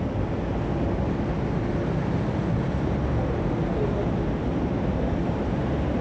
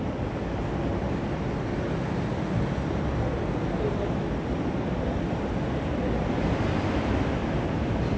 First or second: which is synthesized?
second